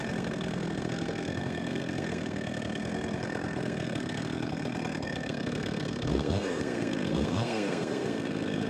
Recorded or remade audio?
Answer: remade